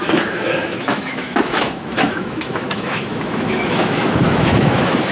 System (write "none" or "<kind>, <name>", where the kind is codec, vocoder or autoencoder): autoencoder, DAC-VAE